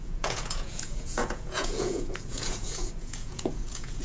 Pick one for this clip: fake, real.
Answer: fake